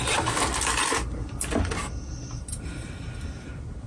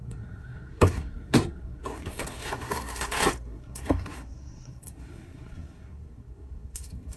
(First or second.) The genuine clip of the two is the first